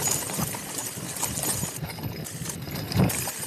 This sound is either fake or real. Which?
real